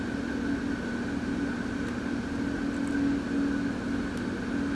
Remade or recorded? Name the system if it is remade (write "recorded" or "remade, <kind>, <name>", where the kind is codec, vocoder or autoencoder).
recorded